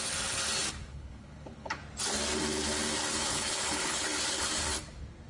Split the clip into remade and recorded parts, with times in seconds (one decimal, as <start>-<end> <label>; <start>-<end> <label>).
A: 0.0-0.9 recorded; 0.9-1.8 remade; 1.8-3.3 recorded; 3.3-4.4 remade; 4.4-5.3 recorded